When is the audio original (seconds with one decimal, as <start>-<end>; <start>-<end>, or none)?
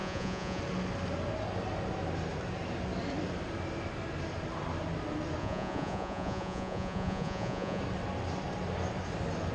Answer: 0.6-5.4; 7.8-9.5